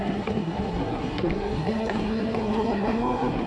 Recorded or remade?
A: remade